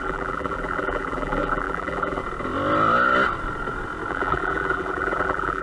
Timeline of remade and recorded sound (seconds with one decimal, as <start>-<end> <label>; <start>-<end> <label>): 0.0-2.2 remade; 2.2-4.1 recorded; 4.1-5.6 remade